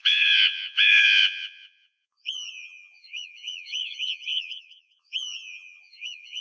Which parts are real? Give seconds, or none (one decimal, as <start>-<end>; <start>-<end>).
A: none